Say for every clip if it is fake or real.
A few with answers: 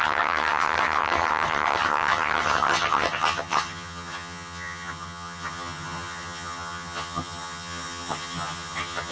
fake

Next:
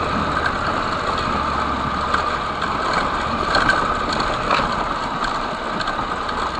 real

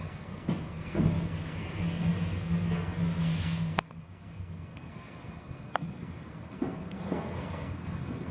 fake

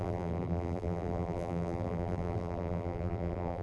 fake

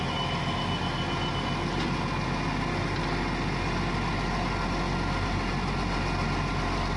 real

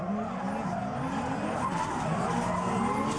real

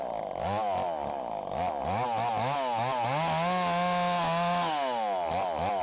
real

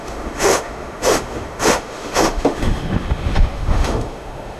fake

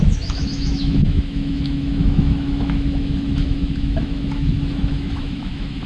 fake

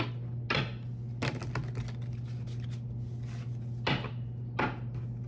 real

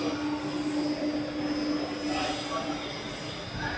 real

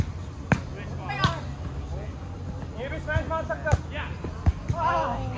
real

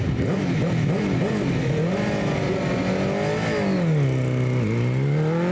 real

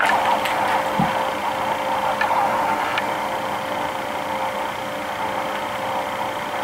real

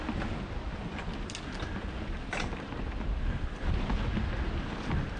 real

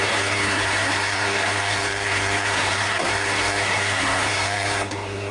fake